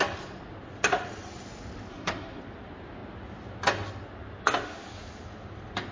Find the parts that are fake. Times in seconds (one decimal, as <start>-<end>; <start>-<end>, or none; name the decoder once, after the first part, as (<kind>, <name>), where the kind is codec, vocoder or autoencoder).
1.9-2.4 (codec, SNAC)